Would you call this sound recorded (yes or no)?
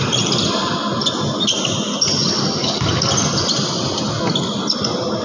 yes